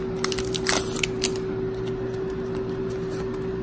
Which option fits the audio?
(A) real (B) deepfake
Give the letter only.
A